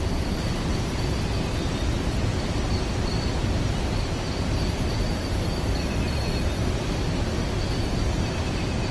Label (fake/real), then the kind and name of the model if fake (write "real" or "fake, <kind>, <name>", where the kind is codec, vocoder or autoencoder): real